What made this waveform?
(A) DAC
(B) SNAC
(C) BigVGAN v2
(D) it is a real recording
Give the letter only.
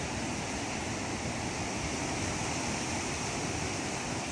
C